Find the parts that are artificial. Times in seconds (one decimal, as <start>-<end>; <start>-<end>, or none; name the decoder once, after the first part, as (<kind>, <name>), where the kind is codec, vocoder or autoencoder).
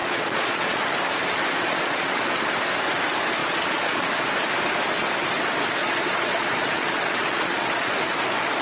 0.0-0.8 (vocoder, Vocos); 1.7-2.2; 3.4-4.1; 5.8-7.9